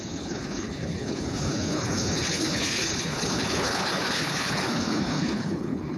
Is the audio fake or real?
fake